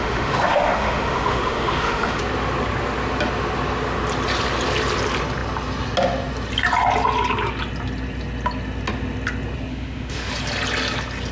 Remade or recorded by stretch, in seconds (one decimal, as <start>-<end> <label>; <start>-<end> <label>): 0.0-2.2 remade; 2.2-9.7 recorded; 9.7-10.3 remade; 10.3-11.3 recorded